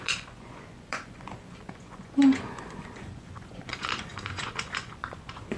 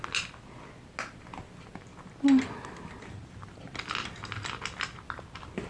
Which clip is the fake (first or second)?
first